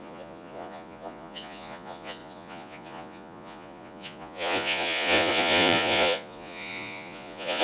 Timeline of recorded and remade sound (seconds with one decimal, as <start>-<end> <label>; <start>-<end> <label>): 0.0-7.6 remade